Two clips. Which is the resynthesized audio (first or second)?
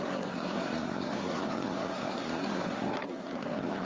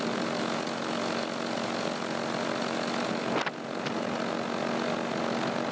first